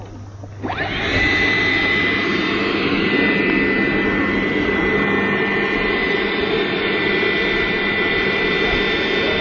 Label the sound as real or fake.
real